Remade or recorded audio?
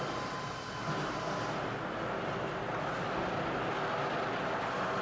recorded